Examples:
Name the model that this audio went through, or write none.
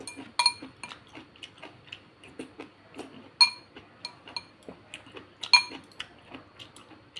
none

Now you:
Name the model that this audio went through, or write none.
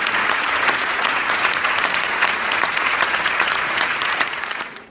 vocoder, Vocos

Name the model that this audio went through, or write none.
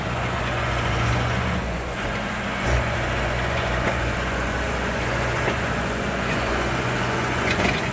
vocoder, Vocos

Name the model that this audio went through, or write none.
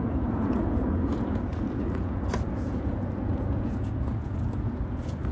vocoder, Vocos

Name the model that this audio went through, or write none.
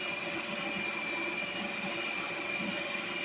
none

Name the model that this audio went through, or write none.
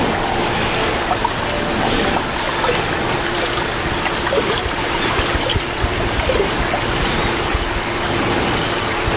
none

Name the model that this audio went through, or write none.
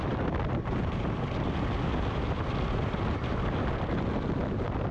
none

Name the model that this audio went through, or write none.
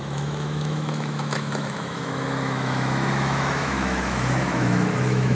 autoencoder, DAC-VAE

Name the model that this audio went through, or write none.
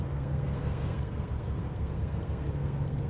codec, SNAC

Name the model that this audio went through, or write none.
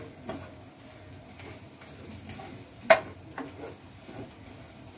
none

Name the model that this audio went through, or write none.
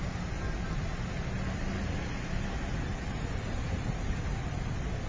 none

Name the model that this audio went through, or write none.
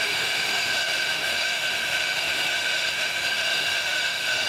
autoencoder, DAC-VAE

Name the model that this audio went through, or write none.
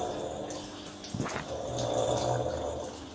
none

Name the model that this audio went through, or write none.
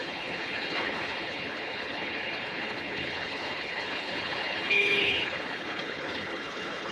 codec, HILCodec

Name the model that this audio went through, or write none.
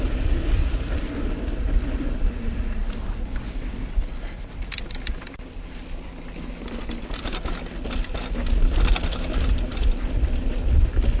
none